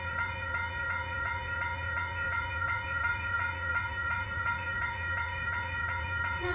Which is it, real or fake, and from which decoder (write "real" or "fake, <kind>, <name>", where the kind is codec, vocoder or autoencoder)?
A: fake, vocoder, Vocos